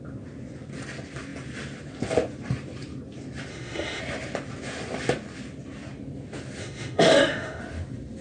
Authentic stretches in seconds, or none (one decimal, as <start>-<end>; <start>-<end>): 0.0-3.5; 4.0-6.6; 7.6-8.2